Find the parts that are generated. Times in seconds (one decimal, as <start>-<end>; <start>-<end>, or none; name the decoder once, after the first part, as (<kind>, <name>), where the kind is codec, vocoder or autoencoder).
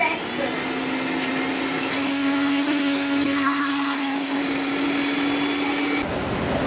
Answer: 1.9-4.4 (codec, SNAC)